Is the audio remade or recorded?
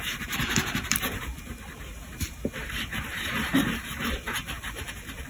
remade